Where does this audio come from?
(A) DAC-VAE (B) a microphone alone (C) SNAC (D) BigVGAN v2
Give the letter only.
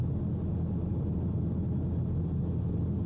B